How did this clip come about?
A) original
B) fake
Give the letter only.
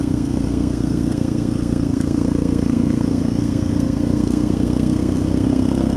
B